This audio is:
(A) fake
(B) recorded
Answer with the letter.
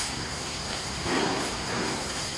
A